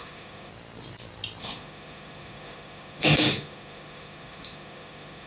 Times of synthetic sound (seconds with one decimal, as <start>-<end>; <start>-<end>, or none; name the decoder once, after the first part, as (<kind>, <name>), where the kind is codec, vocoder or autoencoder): 0.0-0.5 (autoencoder, DAC-VAE); 1.4-5.3